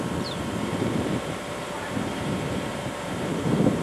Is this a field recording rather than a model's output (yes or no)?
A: no